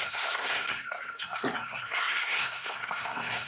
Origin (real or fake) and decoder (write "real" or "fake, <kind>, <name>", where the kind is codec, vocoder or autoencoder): fake, codec, SNAC